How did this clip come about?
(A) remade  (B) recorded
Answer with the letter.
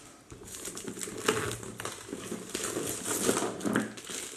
B